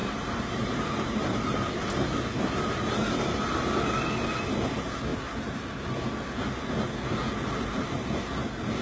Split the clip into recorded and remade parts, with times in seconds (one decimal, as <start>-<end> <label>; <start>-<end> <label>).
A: 0.0-3.7 remade; 3.7-8.8 recorded